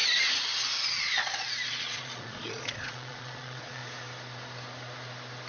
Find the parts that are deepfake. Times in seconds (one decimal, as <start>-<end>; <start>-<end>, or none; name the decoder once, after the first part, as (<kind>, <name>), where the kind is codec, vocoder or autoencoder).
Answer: 1.0-3.8 (vocoder, Vocos)